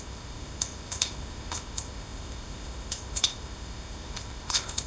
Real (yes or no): no